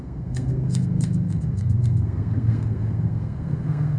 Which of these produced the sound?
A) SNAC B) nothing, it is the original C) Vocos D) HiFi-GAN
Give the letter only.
A